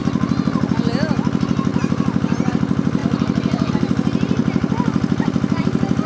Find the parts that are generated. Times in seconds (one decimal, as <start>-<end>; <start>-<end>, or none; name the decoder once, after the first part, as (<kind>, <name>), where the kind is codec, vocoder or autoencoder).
0.0-0.8 (vocoder, BigVGAN v2); 1.7-2.5; 4.4-5.6

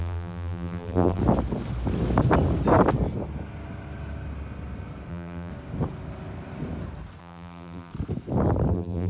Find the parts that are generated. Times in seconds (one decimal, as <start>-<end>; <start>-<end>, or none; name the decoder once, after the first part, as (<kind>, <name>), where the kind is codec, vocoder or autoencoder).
0.0-1.2 (vocoder, BigVGAN v2); 5.1-5.5; 7.2-7.9; 8.7-9.1

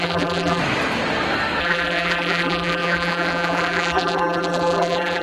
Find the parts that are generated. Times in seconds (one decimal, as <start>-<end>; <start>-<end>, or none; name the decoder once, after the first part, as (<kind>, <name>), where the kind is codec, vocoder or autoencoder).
0.0-0.6 (vocoder, BigVGAN v2); 1.6-5.2

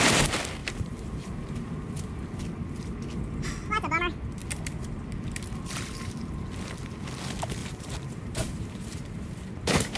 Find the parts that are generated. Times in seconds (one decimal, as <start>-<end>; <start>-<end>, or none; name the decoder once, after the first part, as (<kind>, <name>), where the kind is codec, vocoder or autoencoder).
0.6-1.7 (vocoder, BigVGAN v2); 7.6-9.4

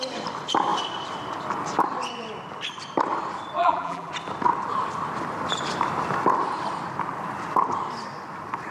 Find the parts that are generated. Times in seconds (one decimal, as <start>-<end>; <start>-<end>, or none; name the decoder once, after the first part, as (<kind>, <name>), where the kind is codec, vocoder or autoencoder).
3.6-4.1 (vocoder, BigVGAN v2)

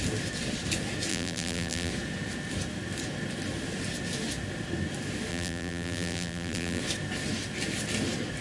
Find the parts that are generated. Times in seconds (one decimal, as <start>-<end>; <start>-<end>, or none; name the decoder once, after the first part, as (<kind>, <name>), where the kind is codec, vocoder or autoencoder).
1.1-1.9 (vocoder, BigVGAN v2); 5.3-6.8

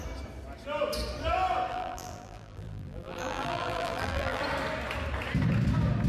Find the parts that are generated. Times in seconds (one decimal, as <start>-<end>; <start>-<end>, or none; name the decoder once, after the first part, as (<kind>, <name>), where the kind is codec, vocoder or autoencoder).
1.7-4.4 (vocoder, BigVGAN v2)